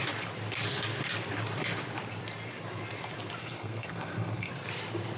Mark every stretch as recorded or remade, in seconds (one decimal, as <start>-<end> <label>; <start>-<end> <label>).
0.0-3.4 recorded; 3.4-4.5 remade; 4.5-5.2 recorded